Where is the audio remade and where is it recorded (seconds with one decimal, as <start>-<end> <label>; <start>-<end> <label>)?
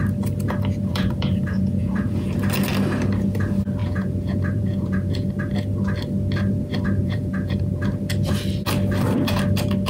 0.0-0.9 recorded; 0.9-2.3 remade; 2.3-3.8 recorded; 3.8-5.3 remade; 5.3-7.0 recorded; 7.0-7.8 remade; 7.8-9.9 recorded